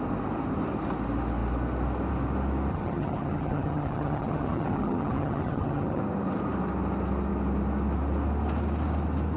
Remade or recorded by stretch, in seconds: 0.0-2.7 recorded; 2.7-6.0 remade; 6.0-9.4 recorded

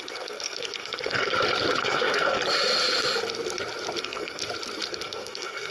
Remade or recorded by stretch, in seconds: 0.0-1.3 remade; 1.3-1.8 recorded; 1.8-2.4 remade; 2.4-4.0 recorded; 4.0-4.4 remade; 4.4-4.9 recorded; 4.9-5.7 remade

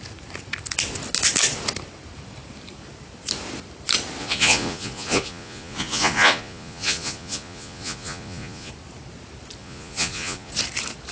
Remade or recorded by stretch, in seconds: 0.0-4.2 recorded; 4.2-8.7 remade; 8.7-9.6 recorded; 9.6-10.5 remade; 10.5-11.1 recorded

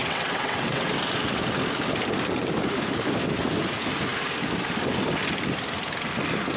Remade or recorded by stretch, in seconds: 0.0-0.9 remade; 0.9-6.6 recorded

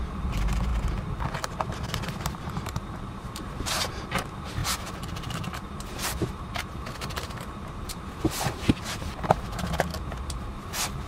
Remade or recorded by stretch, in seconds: 0.0-0.7 remade; 0.7-1.3 recorded; 1.3-9.9 remade; 9.9-10.5 recorded; 10.5-11.1 remade